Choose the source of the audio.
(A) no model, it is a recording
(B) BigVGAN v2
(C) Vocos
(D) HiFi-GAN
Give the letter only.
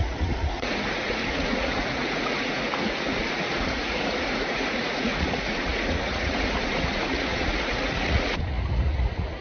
C